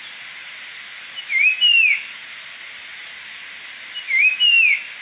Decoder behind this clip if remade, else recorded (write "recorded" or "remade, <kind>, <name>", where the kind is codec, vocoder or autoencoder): recorded